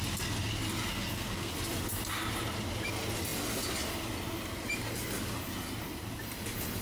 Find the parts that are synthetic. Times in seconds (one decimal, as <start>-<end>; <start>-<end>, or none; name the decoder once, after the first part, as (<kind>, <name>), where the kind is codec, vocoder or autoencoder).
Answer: 0.9-1.5 (codec, SNAC)